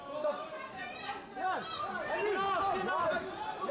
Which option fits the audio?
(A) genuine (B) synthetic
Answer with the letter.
A